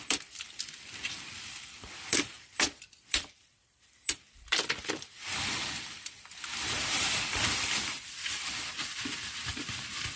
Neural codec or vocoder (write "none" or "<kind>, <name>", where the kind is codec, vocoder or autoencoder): vocoder, BigVGAN v2